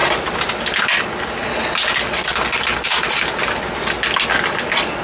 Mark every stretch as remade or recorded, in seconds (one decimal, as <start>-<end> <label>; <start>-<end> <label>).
0.0-5.0 recorded